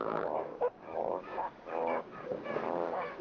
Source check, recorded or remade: remade